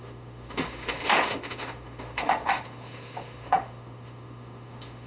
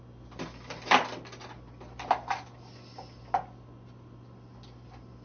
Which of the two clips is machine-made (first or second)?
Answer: first